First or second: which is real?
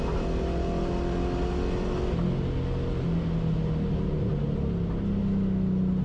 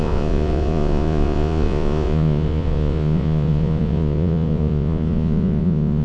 first